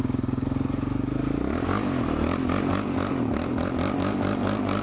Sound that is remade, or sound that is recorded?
recorded